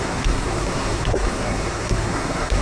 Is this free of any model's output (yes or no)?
no